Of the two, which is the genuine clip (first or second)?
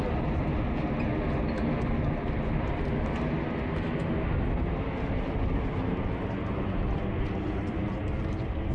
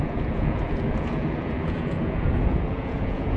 first